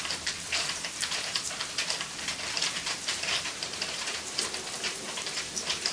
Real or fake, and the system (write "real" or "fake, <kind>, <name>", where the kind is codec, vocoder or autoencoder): fake, vocoder, BigVGAN v2